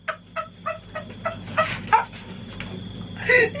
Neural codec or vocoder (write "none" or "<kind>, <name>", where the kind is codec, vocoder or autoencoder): none